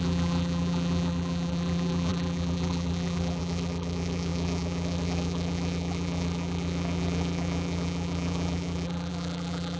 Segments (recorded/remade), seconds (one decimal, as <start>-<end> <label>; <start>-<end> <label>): 0.0-9.8 remade